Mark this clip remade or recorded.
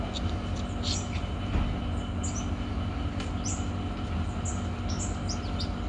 recorded